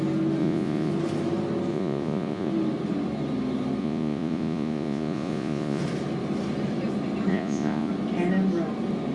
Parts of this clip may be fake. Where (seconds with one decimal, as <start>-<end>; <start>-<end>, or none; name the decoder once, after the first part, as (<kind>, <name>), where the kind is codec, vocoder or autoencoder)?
0.4-0.9 (vocoder, Vocos); 1.7-2.5; 3.8-5.8; 7.3-7.9